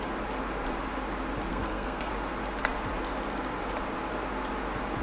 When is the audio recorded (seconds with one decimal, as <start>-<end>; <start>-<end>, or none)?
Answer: 0.0-1.5; 2.1-5.0